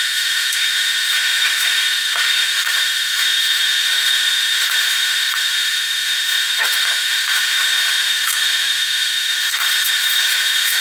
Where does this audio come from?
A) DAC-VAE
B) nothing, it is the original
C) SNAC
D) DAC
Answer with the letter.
A